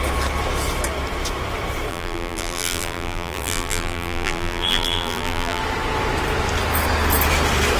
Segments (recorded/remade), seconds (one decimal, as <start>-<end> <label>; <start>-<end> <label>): 0.0-1.9 recorded; 1.9-5.6 remade; 5.6-7.8 recorded